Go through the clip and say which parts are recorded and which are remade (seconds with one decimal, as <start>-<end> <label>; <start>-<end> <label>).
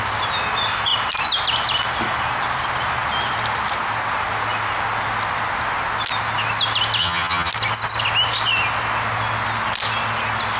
0.0-7.0 recorded; 7.0-7.5 remade; 7.5-10.6 recorded